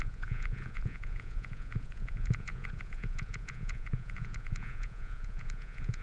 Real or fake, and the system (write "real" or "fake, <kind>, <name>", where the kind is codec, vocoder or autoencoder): fake, vocoder, Vocos